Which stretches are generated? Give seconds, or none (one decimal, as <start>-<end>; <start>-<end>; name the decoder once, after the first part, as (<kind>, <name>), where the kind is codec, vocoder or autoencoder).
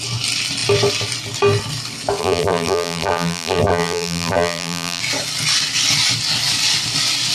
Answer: 2.2-5.0 (vocoder, BigVGAN v2)